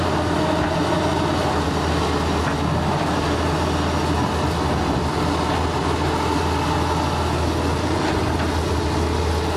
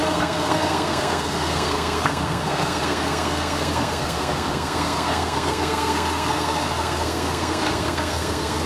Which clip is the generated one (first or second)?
second